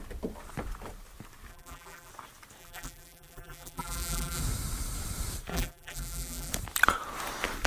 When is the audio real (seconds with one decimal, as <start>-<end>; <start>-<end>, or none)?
0.0-1.5; 2.1-2.6; 4.4-5.5; 6.5-7.7